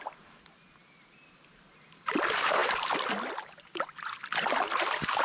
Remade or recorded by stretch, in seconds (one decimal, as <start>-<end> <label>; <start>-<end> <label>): 0.0-5.2 recorded